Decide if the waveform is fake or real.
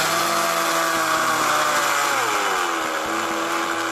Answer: real